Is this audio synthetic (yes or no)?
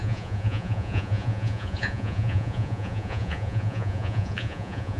yes